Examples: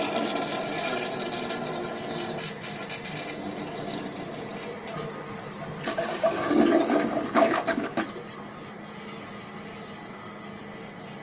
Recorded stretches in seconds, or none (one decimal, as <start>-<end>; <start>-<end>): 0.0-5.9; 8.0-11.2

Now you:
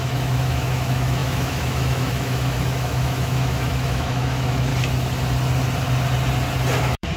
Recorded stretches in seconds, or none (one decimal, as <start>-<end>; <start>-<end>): 4.7-6.8

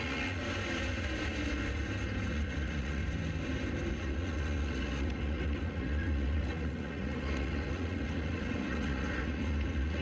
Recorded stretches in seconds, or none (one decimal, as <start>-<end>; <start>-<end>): 0.4-2.3; 3.0-3.9

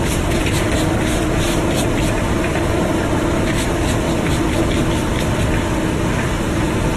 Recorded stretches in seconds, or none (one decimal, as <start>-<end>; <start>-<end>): 0.0-1.8; 3.0-7.0

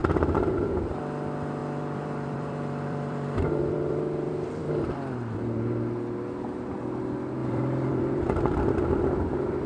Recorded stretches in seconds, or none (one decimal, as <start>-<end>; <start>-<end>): 1.0-1.6; 5.1-7.4; 8.3-9.7

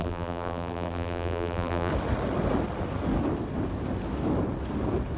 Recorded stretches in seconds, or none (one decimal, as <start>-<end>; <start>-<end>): 1.9-5.2